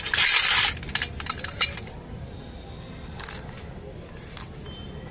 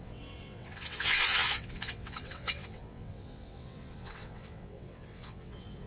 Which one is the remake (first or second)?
second